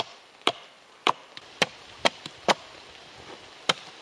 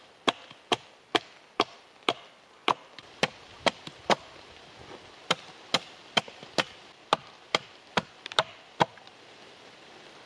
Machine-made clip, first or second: first